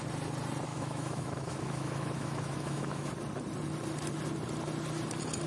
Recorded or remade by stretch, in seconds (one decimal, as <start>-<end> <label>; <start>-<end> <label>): 0.0-0.7 recorded; 0.7-3.1 remade; 3.1-5.5 recorded